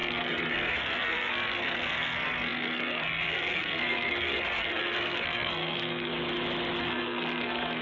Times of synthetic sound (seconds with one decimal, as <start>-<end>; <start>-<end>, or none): 0.0-6.1; 6.8-7.8